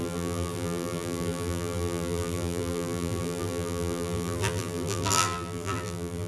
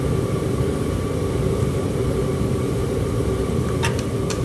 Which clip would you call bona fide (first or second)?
second